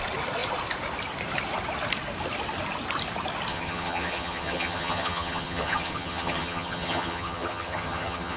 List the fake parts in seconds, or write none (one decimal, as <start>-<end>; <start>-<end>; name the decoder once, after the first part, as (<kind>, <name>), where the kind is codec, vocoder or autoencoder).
3.5-8.4 (vocoder, HiFi-GAN)